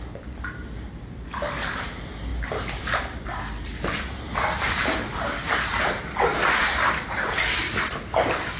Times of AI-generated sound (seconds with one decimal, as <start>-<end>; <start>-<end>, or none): none